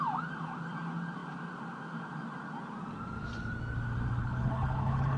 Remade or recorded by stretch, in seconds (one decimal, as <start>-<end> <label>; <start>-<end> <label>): 0.0-4.2 recorded; 4.2-5.2 remade

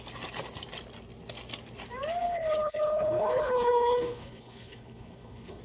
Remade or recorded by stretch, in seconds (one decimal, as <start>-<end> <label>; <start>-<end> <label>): 0.0-2.2 recorded; 2.2-5.6 remade

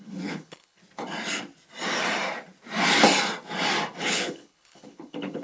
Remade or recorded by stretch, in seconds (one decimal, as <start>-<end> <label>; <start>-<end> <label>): 0.0-0.8 remade; 0.8-4.0 recorded; 4.0-5.4 remade